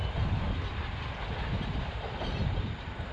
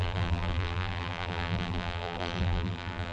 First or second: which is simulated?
second